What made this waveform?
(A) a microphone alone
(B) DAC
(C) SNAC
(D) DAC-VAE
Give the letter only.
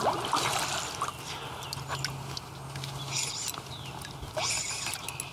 A